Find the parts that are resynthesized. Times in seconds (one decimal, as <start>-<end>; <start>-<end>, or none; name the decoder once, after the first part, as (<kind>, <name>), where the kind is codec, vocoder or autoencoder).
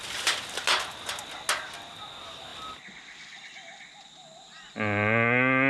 none